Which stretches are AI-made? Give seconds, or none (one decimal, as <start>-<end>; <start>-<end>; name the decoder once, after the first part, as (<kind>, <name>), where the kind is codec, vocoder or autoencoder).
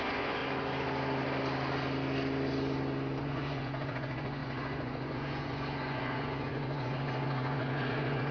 0.0-0.4 (vocoder, Vocos); 3.2-8.3